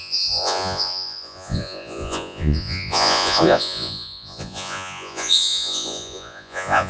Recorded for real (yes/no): no